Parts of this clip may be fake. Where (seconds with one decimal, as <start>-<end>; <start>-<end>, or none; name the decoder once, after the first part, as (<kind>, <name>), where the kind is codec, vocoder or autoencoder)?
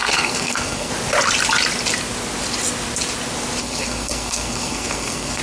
0.0-0.9 (codec, SNAC); 3.6-5.4